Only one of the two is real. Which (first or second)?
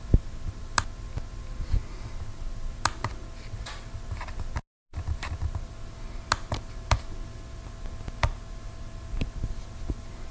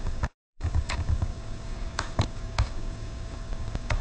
first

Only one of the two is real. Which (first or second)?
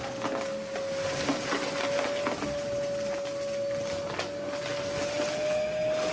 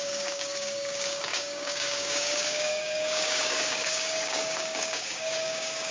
first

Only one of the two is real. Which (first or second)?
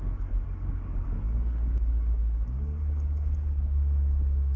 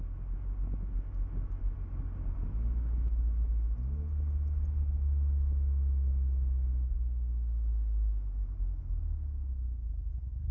second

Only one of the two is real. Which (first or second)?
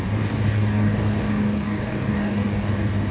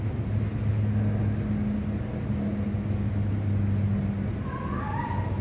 second